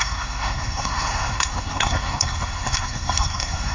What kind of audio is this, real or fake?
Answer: fake